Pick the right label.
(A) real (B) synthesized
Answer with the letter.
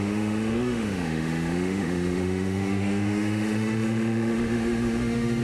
B